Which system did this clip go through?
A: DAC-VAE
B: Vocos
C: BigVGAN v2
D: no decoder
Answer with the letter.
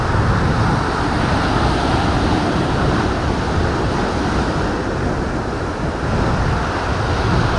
D